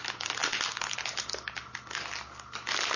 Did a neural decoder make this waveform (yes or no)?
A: no